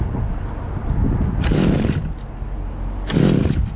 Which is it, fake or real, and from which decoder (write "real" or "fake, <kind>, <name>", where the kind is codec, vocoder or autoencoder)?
real